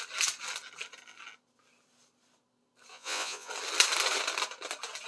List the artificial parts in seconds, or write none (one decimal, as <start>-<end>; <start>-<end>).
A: 2.9-3.5